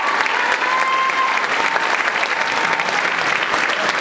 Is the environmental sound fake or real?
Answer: real